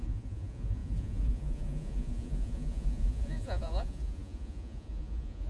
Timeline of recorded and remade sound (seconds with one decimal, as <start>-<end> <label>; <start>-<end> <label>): 0.0-5.5 remade